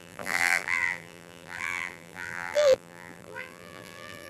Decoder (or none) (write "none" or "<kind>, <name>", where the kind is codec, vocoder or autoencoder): vocoder, BigVGAN v2